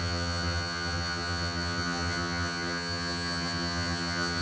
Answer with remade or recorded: remade